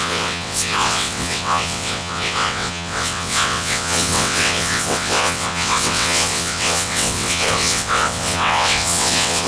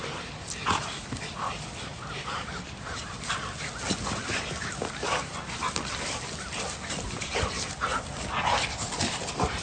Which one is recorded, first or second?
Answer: second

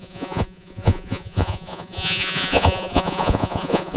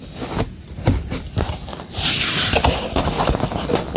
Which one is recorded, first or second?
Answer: second